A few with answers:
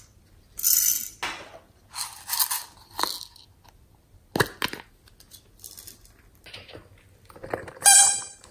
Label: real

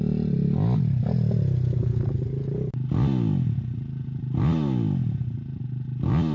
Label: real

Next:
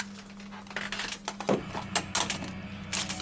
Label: real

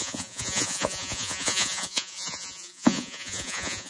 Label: fake